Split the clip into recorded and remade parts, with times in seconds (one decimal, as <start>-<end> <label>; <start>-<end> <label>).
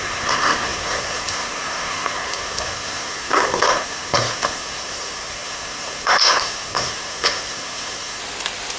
0.0-8.2 remade; 8.2-8.8 recorded